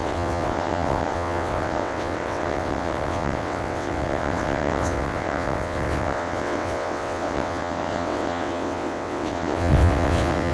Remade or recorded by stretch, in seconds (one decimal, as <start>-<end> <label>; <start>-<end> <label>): 0.0-10.5 remade